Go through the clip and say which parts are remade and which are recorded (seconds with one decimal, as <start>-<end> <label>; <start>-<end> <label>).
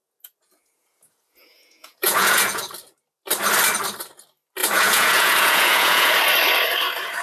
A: 0.0-2.6 remade; 2.6-4.6 recorded; 4.6-6.1 remade; 6.1-7.2 recorded